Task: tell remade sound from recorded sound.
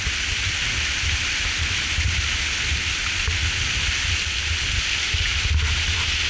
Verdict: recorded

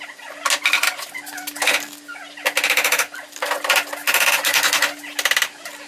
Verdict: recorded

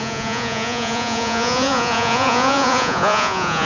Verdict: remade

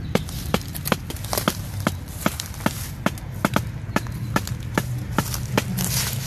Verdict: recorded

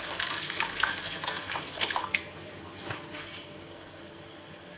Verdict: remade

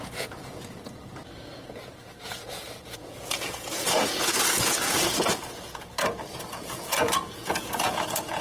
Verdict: remade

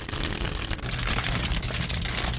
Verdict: recorded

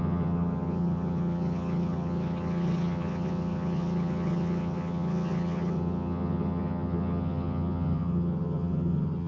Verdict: remade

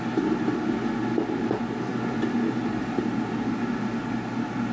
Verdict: recorded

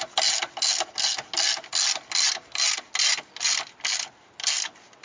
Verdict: recorded